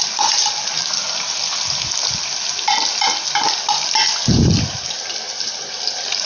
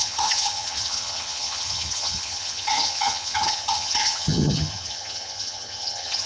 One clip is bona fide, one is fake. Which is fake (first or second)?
second